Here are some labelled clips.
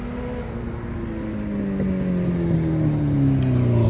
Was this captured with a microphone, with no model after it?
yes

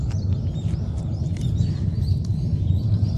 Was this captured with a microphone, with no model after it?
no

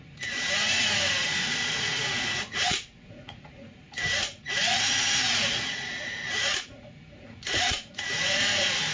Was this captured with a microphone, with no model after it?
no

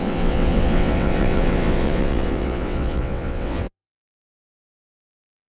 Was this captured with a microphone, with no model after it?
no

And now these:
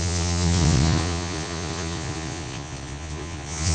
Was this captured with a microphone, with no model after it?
no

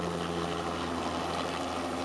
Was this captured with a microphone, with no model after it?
yes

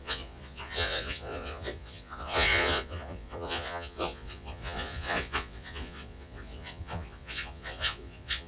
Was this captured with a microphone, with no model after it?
no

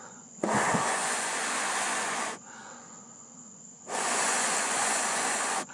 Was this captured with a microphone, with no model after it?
no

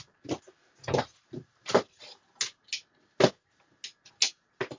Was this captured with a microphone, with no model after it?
yes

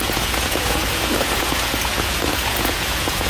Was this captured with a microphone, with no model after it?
no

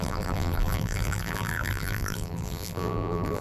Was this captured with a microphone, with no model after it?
no